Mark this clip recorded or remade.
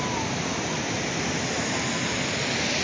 recorded